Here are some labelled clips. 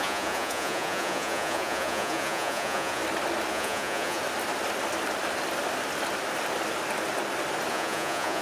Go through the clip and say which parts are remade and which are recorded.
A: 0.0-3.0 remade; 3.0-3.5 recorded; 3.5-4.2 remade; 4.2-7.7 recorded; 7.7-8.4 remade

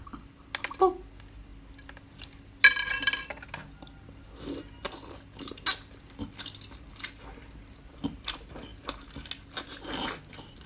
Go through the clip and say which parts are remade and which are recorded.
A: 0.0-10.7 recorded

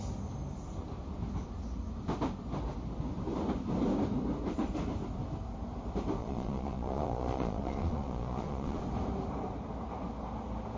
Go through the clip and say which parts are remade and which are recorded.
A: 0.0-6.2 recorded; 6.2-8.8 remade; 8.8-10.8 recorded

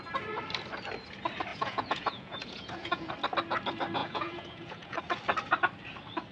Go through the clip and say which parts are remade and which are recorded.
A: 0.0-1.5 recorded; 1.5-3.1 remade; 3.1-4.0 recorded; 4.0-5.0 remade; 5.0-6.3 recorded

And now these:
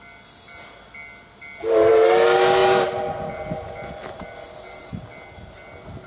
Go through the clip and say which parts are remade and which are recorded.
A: 0.0-6.1 recorded

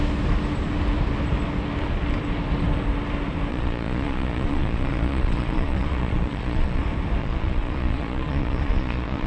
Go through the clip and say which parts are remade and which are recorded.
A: 0.0-3.5 recorded; 3.5-6.8 remade; 6.8-7.2 recorded; 7.2-9.3 remade

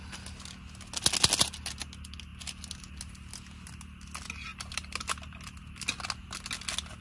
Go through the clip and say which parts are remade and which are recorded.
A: 0.0-7.0 recorded

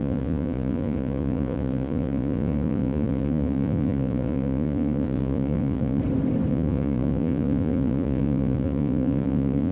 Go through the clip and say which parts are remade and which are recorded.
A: 0.0-6.0 remade; 6.0-6.5 recorded; 6.5-9.7 remade